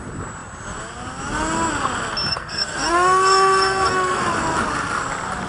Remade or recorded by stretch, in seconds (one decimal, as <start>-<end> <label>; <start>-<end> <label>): 0.0-2.3 recorded; 2.3-4.2 remade; 4.2-5.5 recorded